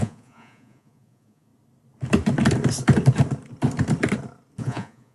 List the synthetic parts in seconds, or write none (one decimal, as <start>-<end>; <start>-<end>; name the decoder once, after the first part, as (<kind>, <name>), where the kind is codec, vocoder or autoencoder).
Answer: 0.0-1.5 (vocoder, Vocos); 4.6-5.1